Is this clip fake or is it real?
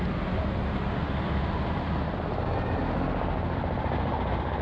real